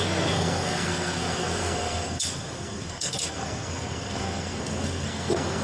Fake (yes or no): yes